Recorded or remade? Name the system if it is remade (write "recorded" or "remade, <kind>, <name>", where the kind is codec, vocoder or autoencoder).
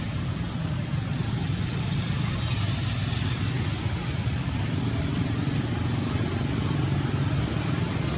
recorded